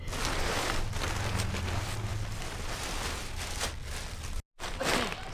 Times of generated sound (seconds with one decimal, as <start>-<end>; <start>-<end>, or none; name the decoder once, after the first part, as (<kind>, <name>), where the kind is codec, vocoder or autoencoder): none